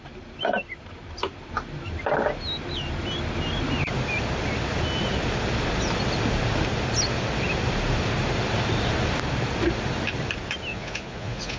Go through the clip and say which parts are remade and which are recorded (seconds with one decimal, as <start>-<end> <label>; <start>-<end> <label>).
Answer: 0.0-10.7 recorded; 10.7-11.6 remade